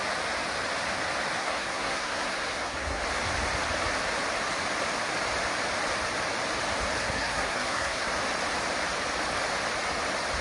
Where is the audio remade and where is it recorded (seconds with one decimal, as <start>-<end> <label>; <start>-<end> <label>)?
0.0-1.4 recorded; 1.4-3.0 remade; 3.0-7.0 recorded; 7.0-8.1 remade; 8.1-10.4 recorded